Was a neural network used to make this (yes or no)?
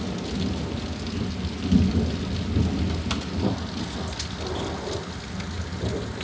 no